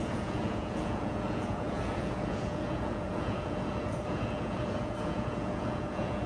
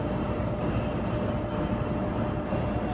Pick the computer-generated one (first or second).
first